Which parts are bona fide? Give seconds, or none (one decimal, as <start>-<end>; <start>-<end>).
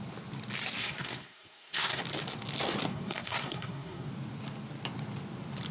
0.0-0.8; 2.0-2.9; 4.1-5.7